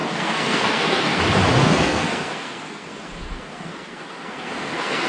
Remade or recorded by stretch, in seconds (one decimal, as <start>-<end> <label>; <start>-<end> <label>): 0.0-1.2 remade; 1.2-1.6 recorded; 1.6-5.1 remade